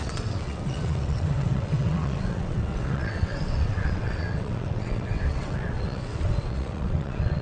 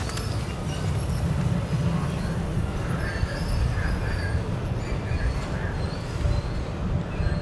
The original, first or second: second